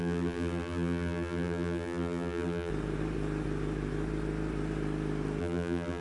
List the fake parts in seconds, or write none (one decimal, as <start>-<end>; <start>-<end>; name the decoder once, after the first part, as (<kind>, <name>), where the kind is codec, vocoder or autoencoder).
0.0-2.7 (vocoder, BigVGAN v2); 5.4-6.0